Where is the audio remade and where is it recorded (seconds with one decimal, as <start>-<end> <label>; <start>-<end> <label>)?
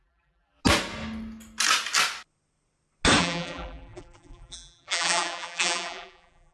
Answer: 0.0-0.6 remade; 0.6-3.2 recorded; 3.2-6.5 remade